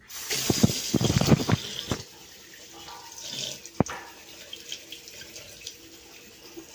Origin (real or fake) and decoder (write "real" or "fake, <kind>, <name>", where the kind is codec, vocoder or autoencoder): real